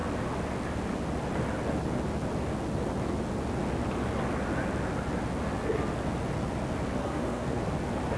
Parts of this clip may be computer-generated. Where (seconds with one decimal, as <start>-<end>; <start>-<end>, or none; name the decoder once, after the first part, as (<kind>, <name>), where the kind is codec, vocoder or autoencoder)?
7.0-7.6 (codec, SNAC)